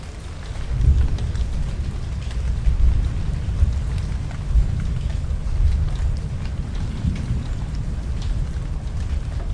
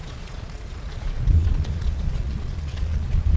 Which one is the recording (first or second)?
first